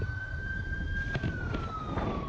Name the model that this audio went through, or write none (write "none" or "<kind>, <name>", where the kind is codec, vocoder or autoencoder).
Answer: none